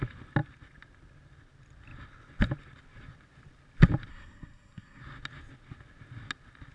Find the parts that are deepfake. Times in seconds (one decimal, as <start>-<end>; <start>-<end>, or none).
4.1-5.0